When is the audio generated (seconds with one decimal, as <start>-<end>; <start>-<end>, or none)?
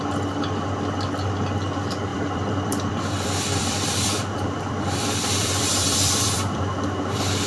2.1-6.6